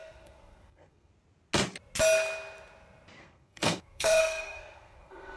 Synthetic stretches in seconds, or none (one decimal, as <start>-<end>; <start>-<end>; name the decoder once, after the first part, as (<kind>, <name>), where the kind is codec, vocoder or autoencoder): 0.0-1.1 (codec, SNAC); 3.2-5.4